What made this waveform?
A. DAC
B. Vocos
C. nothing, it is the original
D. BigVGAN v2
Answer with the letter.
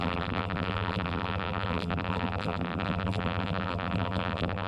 D